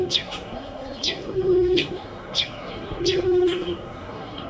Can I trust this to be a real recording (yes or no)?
no